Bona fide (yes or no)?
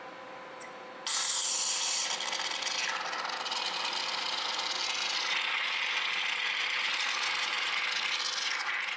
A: yes